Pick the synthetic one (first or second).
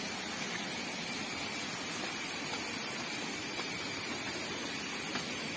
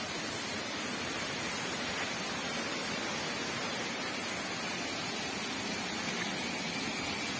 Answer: first